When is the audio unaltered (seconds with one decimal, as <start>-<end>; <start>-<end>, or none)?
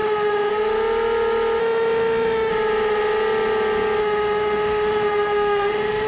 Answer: 0.5-1.6; 2.5-4.0